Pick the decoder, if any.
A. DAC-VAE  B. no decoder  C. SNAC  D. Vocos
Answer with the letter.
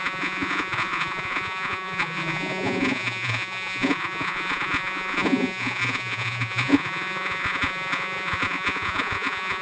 D